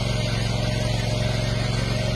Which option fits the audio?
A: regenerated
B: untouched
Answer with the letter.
B